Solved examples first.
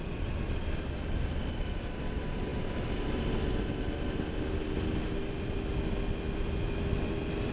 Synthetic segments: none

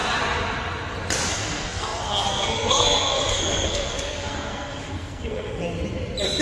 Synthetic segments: 1.3-5.6 (codec, SNAC)